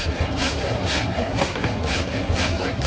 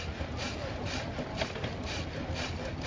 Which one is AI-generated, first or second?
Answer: first